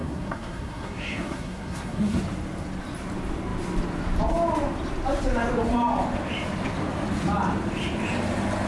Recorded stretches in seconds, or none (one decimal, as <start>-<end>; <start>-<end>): 2.2-8.7